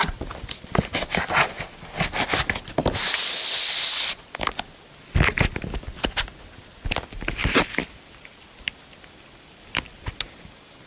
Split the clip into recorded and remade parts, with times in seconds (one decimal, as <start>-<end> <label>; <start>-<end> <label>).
0.0-7.4 recorded; 7.4-10.0 remade; 10.0-10.9 recorded